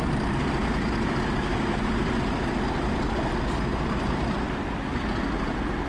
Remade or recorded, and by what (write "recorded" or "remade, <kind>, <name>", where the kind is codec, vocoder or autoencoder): recorded